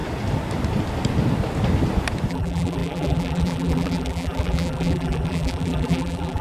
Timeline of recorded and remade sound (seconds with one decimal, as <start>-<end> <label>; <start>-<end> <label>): 0.0-2.3 recorded; 2.3-6.4 remade

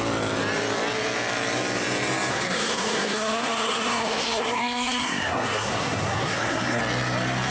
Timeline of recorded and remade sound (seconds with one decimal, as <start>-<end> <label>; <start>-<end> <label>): 0.0-2.3 recorded; 2.3-6.8 remade; 6.8-7.5 recorded

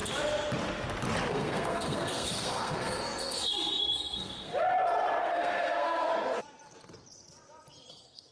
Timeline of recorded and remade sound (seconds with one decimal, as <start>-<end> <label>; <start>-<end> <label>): 0.0-1.3 recorded; 1.3-4.5 remade; 4.5-5.2 recorded; 5.2-6.1 remade; 6.1-7.9 recorded; 7.9-8.3 remade

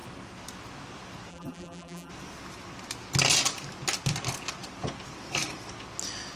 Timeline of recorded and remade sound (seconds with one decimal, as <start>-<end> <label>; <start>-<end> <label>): 0.0-1.3 recorded; 1.3-2.1 remade; 2.1-6.4 recorded